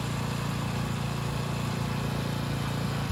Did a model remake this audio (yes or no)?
no